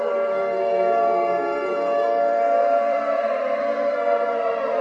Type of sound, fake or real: fake